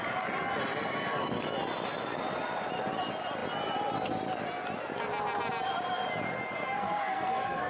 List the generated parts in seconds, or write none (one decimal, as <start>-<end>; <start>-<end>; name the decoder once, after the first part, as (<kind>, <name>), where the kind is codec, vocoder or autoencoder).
6.6-7.7 (codec, SNAC)